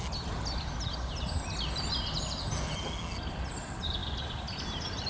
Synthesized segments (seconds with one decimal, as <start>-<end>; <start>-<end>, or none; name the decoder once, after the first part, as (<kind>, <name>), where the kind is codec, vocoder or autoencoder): none